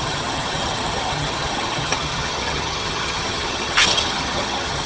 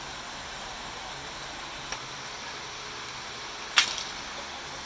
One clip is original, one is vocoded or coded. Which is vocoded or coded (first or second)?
first